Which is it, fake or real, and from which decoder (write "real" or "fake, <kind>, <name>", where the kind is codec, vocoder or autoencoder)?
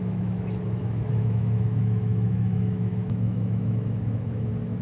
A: fake, autoencoder, DAC-VAE